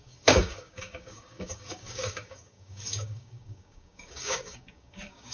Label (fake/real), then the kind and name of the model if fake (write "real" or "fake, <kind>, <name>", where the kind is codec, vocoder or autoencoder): fake, codec, DAC